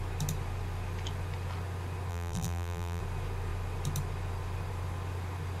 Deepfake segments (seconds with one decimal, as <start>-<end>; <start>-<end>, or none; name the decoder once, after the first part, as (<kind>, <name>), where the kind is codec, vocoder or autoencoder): 2.1-3.0 (vocoder, BigVGAN v2)